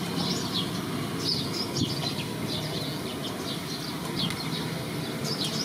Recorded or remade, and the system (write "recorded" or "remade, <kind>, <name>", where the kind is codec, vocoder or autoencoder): recorded